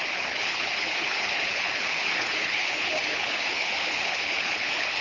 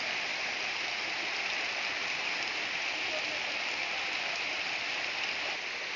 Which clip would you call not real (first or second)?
first